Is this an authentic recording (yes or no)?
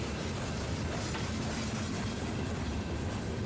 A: yes